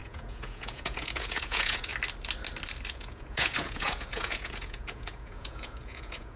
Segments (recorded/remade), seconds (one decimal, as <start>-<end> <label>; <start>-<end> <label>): 0.0-1.9 remade; 1.9-2.9 recorded; 2.9-6.4 remade